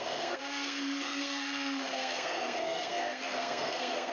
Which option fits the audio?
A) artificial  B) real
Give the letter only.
A